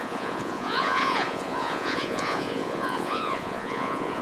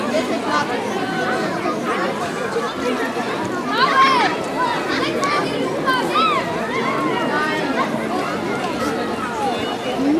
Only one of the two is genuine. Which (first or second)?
second